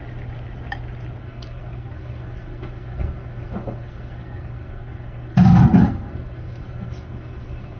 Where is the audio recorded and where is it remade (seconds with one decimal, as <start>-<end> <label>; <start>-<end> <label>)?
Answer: 0.0-1.2 recorded; 1.2-7.8 remade